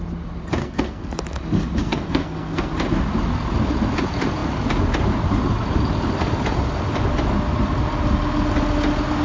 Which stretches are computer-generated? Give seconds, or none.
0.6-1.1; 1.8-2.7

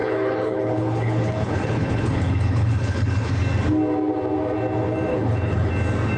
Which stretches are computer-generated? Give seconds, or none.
0.0-3.3; 5.1-5.7